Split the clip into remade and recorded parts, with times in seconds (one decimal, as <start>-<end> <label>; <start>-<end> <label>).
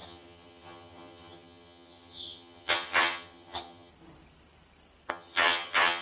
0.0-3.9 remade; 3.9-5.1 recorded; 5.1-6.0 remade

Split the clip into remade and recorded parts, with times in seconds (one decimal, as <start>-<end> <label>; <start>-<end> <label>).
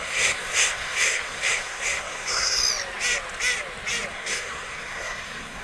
0.0-2.6 remade; 2.6-4.1 recorded; 4.1-5.6 remade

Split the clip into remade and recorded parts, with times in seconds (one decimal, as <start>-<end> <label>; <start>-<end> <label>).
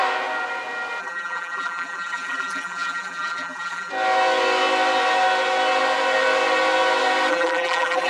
0.0-1.0 recorded; 1.0-3.9 remade; 3.9-7.3 recorded; 7.3-8.1 remade